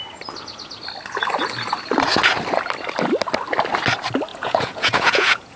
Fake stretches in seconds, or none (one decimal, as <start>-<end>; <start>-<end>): 4.3-5.6

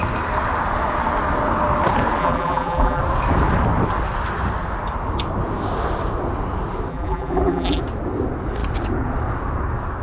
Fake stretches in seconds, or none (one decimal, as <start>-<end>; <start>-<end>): 2.2-3.0; 6.9-7.8